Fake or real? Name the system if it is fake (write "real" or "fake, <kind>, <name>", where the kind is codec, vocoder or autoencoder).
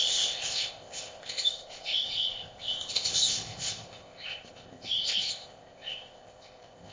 fake, codec, ZipCodec